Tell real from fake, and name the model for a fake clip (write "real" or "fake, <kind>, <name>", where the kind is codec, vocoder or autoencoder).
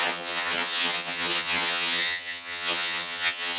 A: fake, vocoder, HiFi-GAN